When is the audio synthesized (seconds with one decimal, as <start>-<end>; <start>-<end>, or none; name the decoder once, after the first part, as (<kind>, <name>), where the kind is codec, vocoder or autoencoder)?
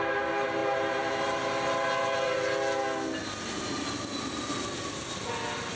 none